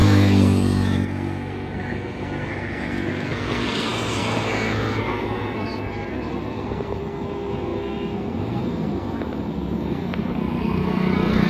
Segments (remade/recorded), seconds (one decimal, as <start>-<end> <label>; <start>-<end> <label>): 0.0-11.5 remade